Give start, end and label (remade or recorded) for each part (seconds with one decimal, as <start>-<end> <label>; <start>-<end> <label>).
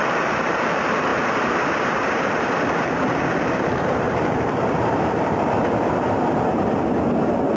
0.0-7.6 remade